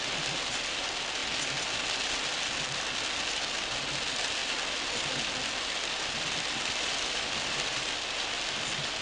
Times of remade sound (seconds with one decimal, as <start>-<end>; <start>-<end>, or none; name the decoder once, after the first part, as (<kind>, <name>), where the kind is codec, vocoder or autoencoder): none